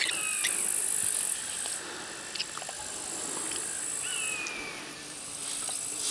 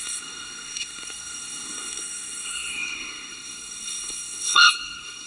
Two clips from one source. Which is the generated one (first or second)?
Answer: second